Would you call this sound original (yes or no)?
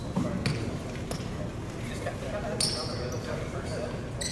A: yes